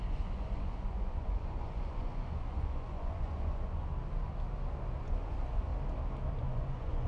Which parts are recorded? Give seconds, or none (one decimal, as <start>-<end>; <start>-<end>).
3.9-5.0; 5.7-6.4

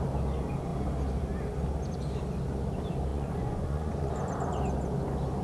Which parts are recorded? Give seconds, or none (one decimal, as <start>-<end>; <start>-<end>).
0.0-3.1; 4.1-5.4